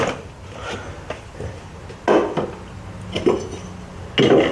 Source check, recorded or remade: recorded